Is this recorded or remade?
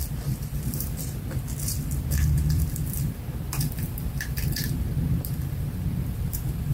remade